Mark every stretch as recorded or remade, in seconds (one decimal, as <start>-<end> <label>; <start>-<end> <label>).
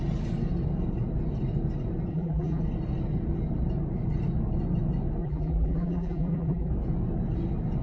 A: 0.0-2.1 recorded; 2.1-2.6 remade; 2.6-5.2 recorded; 5.2-6.7 remade; 6.7-7.8 recorded